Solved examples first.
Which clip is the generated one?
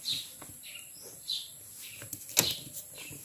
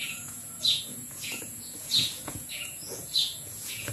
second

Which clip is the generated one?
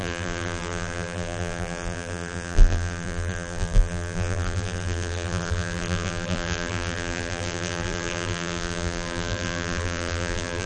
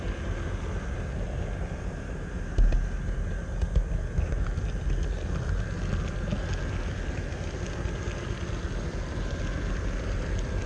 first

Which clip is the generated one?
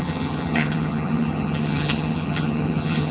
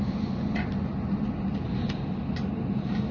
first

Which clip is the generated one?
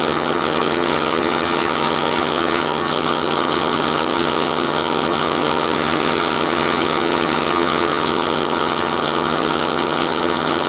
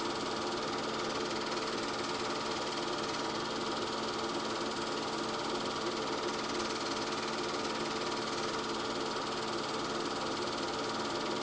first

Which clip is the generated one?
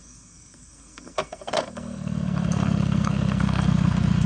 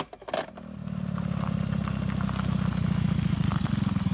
first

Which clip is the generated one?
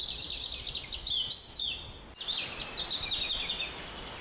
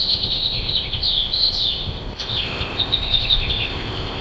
second